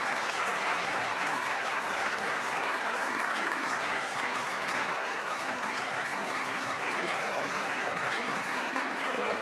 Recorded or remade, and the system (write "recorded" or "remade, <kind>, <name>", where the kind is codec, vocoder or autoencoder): remade, codec, SNAC